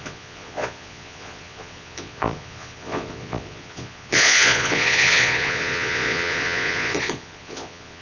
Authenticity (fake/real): fake